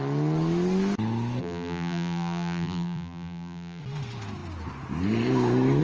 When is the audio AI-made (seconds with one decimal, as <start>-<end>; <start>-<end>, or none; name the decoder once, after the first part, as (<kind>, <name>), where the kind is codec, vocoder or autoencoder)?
1.4-3.8 (vocoder, BigVGAN v2)